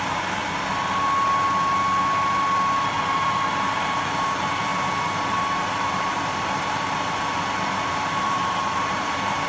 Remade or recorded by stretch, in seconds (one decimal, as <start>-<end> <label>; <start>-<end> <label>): 0.0-0.4 remade; 0.4-3.1 recorded; 3.1-9.5 remade